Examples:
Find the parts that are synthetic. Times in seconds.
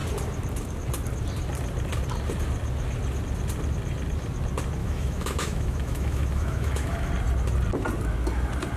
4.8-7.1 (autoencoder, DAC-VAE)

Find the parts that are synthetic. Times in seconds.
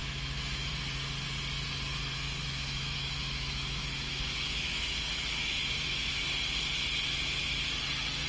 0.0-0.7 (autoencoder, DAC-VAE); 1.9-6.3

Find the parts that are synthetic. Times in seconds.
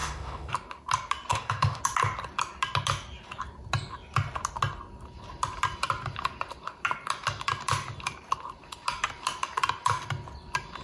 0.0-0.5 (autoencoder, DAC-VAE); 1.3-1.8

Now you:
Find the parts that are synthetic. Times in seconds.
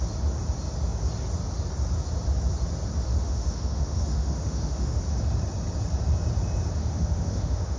3.1-5.0 (autoencoder, DAC-VAE); 6.8-7.8